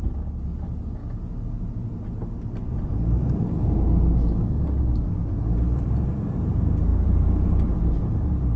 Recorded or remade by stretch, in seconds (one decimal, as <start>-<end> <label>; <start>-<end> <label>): 0.0-1.0 remade; 1.0-4.8 recorded; 4.8-8.6 remade